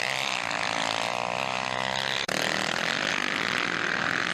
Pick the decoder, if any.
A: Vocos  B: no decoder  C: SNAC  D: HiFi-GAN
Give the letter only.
B